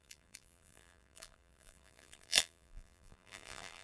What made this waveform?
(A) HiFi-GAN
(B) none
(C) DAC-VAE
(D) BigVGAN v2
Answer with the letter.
D